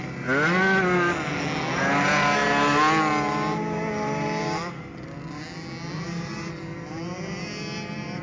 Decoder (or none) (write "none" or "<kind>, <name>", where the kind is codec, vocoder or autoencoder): none